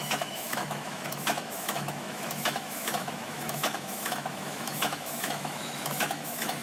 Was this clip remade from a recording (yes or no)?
yes